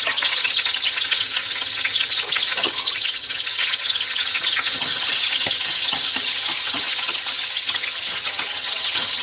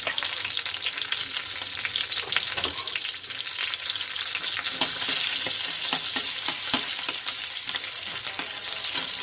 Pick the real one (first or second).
second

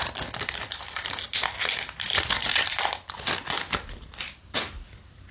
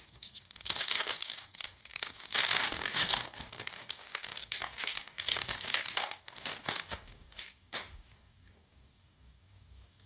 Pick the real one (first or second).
first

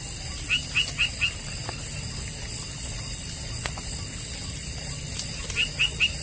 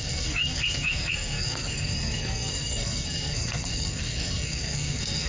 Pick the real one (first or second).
first